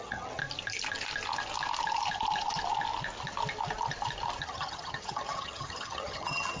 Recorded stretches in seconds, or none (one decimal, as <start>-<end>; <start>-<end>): 0.4-4.4